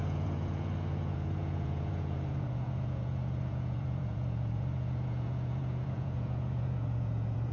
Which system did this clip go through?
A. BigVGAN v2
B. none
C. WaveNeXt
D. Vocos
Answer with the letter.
D